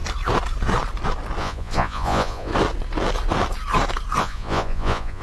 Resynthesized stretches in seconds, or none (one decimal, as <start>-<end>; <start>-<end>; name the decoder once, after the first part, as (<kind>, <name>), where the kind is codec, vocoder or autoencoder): 1.4-2.5 (vocoder, Vocos); 4.2-5.2